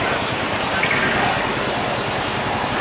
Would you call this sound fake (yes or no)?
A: no